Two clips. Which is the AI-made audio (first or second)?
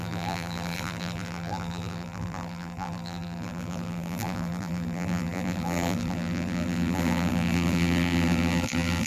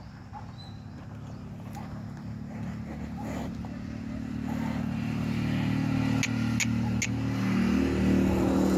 first